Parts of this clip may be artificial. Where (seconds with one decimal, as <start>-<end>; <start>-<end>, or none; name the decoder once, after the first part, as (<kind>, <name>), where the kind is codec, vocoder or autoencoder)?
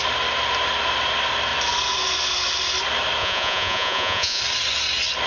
3.2-4.4 (vocoder, Vocos)